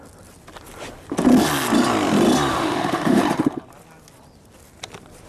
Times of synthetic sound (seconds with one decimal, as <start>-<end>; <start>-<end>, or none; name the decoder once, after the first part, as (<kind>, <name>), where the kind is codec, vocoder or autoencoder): 2.5-3.2 (autoencoder, DAC-VAE)

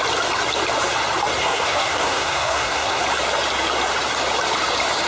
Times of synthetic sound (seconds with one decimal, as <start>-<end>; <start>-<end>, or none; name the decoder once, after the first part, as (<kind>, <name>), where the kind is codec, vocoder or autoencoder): 1.4-3.0 (codec, SNAC)

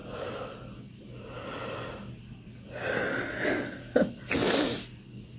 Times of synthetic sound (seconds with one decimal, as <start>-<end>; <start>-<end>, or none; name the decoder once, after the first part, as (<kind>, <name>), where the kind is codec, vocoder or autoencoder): none